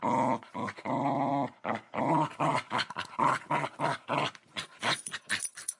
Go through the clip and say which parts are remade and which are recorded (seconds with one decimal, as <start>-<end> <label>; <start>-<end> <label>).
0.0-1.3 recorded; 1.3-2.0 remade; 2.0-4.4 recorded; 4.4-5.3 remade; 5.3-5.8 recorded